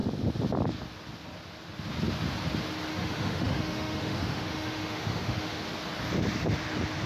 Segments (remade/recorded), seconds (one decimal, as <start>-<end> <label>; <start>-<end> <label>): 0.0-2.9 recorded; 2.9-5.6 remade; 5.6-7.1 recorded